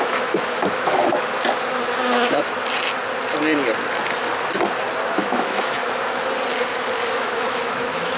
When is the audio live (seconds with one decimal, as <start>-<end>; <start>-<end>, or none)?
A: 1.3-5.1; 5.8-7.1